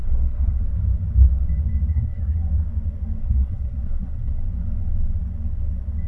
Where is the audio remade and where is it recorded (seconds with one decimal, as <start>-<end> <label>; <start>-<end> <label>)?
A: 0.0-0.6 remade; 0.6-1.9 recorded; 1.9-2.4 remade; 2.4-3.2 recorded; 3.2-4.4 remade; 4.4-6.1 recorded